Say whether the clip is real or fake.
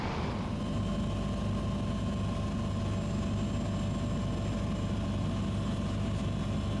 real